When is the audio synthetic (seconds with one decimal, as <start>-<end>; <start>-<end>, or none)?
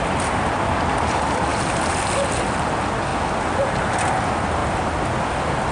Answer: none